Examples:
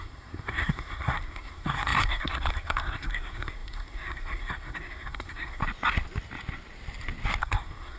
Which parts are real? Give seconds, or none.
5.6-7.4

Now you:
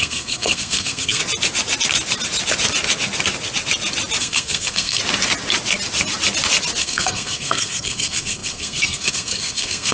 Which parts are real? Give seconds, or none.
1.2-4.2; 5.0-6.8

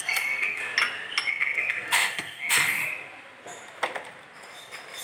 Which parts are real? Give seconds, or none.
0.6-1.3; 2.8-5.0

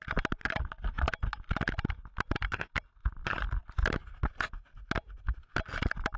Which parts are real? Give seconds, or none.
0.0-6.2

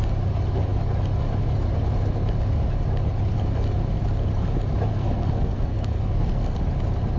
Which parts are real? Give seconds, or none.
0.0-4.9; 6.6-7.2

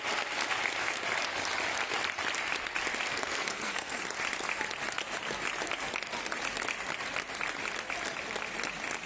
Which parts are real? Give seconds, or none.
0.0-3.1; 4.0-9.1